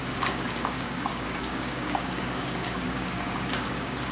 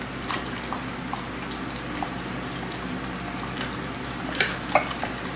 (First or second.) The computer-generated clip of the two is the first